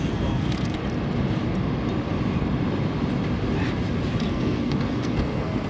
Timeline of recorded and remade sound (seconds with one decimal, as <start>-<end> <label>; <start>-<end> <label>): 0.0-0.8 remade; 0.8-4.2 recorded; 4.2-5.7 remade